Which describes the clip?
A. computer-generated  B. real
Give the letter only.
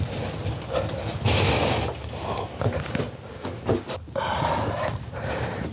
B